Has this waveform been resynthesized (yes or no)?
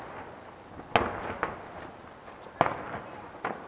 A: no